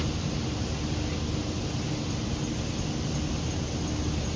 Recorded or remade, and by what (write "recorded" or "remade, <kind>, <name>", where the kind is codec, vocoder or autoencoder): recorded